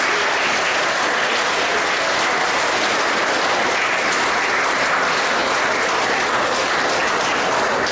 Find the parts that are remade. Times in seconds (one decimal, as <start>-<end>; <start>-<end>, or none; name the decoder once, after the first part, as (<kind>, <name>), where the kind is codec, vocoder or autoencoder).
none